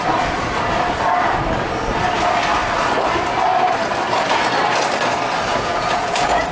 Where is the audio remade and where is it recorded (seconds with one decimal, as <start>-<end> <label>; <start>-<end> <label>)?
0.0-5.5 recorded; 5.5-6.5 remade